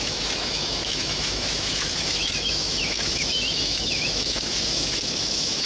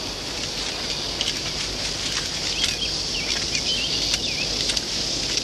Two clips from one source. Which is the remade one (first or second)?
first